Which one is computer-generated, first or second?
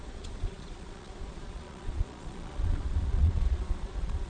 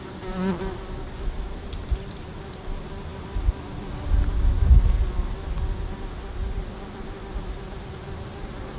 first